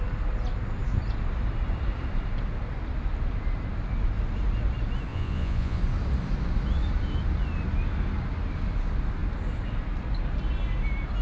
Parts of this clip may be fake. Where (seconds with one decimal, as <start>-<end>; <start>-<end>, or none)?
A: 5.1-5.8